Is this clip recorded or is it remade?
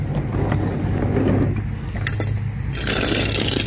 recorded